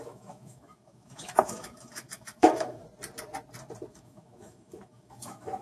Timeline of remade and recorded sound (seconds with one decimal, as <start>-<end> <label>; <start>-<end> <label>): 0.0-2.8 remade; 2.8-3.9 recorded; 3.9-5.6 remade